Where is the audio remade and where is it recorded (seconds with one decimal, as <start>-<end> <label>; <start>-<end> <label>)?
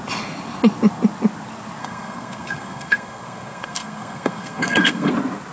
0.0-1.8 recorded; 1.8-5.1 remade; 5.1-5.5 recorded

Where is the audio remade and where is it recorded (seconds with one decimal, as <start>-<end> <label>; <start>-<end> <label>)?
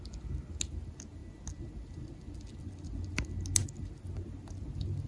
0.0-5.1 recorded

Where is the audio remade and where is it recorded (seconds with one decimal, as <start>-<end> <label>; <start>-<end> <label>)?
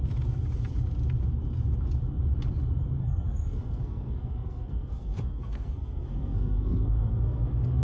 0.0-3.0 recorded; 3.0-7.8 remade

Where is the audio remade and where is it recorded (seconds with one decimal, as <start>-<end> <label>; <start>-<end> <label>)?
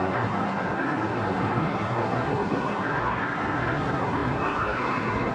0.0-5.3 remade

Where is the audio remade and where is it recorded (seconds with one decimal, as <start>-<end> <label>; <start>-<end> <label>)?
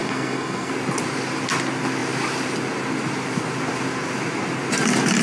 0.0-0.7 remade; 0.7-5.2 recorded